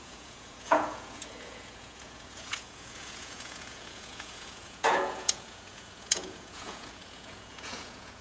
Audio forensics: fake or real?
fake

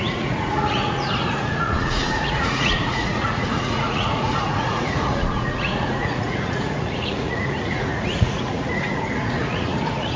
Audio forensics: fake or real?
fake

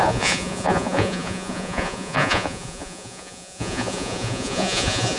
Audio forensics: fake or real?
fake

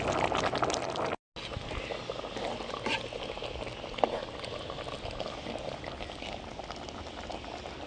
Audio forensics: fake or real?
real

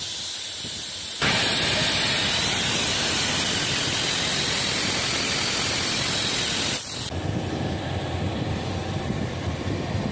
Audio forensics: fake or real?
real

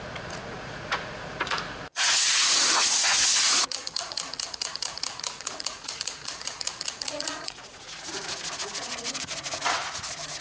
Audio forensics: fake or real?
fake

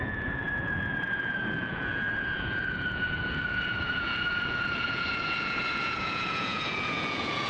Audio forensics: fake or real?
fake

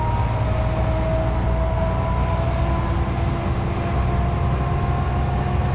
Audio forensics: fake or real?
real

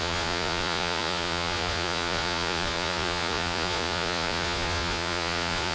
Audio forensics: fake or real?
fake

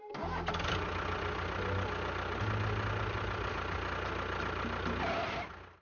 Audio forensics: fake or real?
real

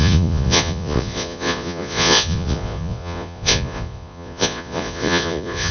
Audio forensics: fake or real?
fake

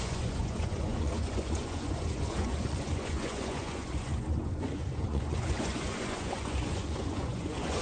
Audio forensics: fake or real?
fake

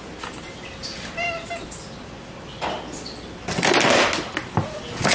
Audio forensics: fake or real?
real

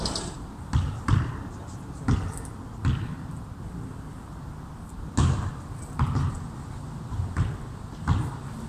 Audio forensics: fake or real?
real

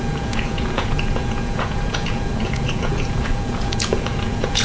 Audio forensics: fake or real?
fake